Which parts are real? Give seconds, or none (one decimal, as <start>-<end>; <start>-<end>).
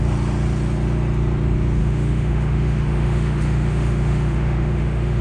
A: 0.0-1.8